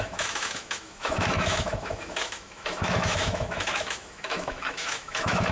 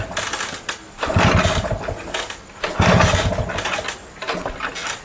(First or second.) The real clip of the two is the second